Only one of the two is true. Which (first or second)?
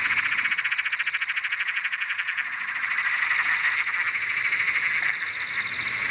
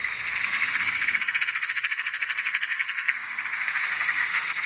first